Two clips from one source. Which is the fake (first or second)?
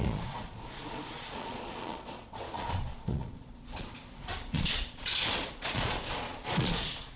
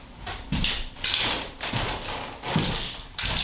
first